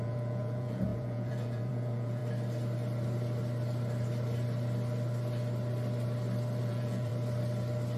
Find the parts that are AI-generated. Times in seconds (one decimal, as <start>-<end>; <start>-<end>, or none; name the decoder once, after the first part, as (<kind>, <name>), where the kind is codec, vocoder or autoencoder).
0.0-2.2 (vocoder, Vocos); 6.6-7.1